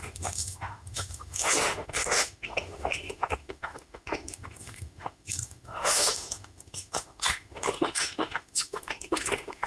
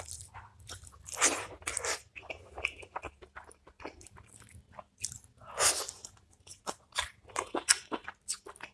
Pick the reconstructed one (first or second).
first